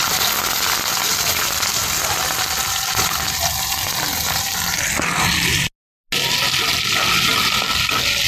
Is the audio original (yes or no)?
yes